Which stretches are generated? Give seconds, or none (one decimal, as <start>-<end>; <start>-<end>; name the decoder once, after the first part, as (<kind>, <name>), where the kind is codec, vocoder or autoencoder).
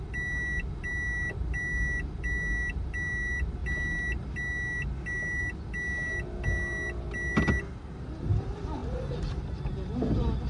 none